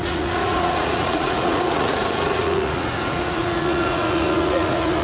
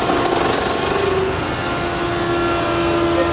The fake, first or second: first